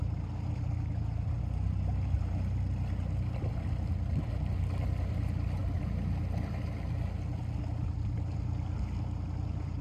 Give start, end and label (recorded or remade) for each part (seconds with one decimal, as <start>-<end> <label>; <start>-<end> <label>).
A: 0.0-9.8 recorded